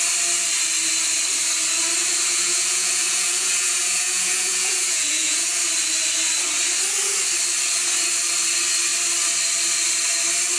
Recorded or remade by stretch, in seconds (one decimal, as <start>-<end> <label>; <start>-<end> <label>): 0.0-2.3 recorded; 2.3-5.6 remade; 5.6-10.6 recorded